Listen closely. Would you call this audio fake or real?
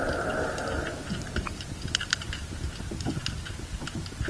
real